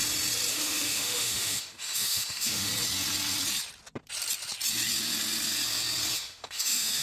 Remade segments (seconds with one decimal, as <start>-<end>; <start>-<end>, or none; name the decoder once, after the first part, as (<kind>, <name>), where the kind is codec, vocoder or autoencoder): 0.5-2.7 (autoencoder, DAC-VAE); 6.1-7.0